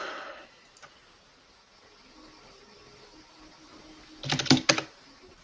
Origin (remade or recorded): recorded